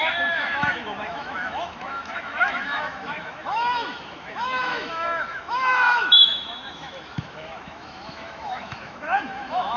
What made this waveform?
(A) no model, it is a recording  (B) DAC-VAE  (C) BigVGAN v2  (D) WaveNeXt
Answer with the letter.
B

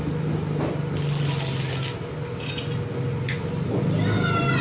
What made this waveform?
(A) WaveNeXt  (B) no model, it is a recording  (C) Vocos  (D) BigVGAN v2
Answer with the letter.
B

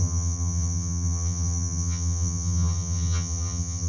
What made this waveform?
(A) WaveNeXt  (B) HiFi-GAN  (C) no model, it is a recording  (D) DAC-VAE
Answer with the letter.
B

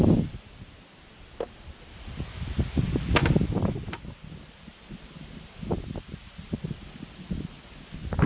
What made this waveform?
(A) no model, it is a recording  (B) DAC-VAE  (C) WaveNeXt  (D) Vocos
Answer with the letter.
A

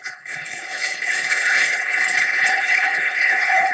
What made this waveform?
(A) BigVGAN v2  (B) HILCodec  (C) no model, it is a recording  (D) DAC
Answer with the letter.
B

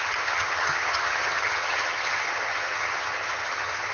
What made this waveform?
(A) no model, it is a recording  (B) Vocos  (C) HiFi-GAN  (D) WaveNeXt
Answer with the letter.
C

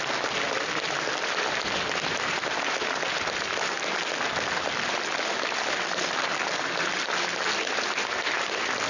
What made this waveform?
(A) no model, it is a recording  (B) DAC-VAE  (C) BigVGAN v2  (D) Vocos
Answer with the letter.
C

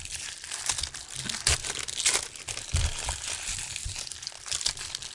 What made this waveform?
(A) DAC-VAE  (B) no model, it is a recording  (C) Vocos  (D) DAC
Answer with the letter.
B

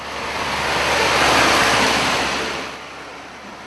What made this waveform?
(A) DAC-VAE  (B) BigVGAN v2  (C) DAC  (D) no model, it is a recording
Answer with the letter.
B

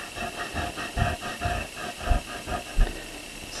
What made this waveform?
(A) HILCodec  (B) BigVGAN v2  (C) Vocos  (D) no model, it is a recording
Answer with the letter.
D